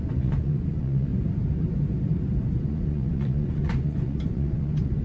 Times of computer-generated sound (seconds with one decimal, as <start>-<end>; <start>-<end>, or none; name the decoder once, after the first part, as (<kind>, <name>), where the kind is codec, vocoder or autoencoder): 0.0-1.1 (vocoder, Vocos); 2.6-5.0